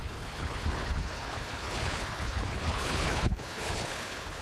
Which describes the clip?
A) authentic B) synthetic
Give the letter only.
B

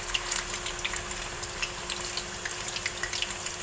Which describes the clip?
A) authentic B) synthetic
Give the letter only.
A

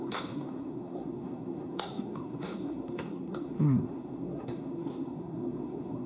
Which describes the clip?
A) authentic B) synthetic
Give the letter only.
B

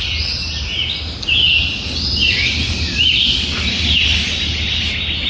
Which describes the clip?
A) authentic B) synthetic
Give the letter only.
A